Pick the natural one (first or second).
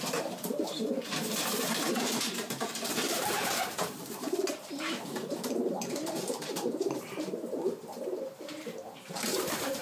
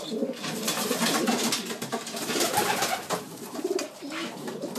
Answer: second